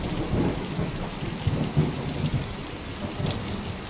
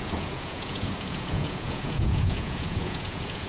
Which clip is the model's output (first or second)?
second